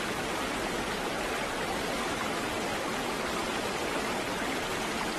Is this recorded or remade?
recorded